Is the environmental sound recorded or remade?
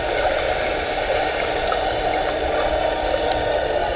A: recorded